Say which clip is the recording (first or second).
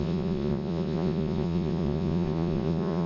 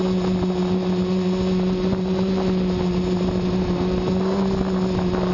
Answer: second